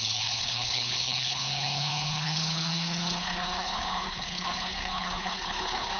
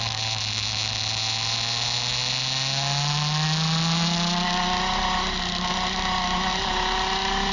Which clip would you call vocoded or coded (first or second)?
first